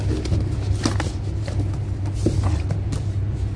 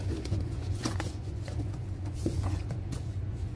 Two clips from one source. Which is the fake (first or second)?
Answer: second